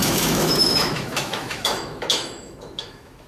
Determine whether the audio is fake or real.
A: fake